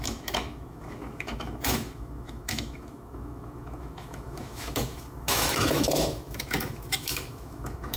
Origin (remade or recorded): remade